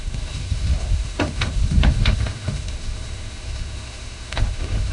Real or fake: fake